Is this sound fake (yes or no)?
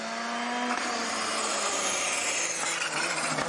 no